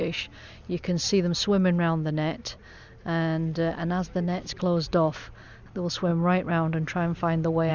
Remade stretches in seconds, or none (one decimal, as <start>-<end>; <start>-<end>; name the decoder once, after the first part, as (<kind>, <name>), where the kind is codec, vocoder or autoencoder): none